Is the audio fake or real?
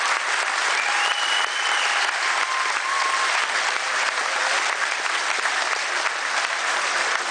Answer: real